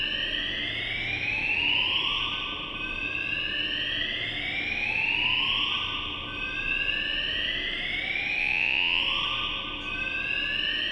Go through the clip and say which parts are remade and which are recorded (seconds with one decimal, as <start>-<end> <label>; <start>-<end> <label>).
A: 0.0-8.4 recorded; 8.4-9.0 remade; 9.0-10.9 recorded